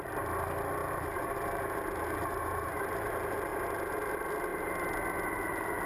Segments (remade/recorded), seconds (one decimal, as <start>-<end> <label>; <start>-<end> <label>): 0.0-0.8 recorded; 0.8-1.6 remade; 1.6-2.2 recorded; 2.2-3.1 remade; 3.1-5.9 recorded